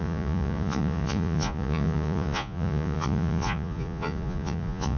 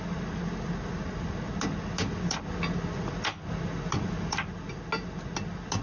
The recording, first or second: second